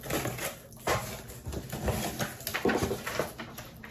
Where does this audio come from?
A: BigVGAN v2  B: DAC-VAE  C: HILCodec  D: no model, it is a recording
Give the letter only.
D